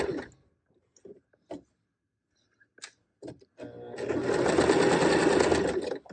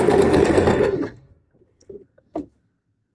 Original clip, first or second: first